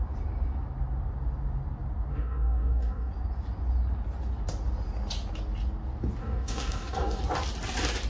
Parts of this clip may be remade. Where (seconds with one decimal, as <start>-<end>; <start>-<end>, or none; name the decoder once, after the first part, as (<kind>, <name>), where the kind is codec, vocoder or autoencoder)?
2.1-3.1 (codec, DAC); 6.2-7.2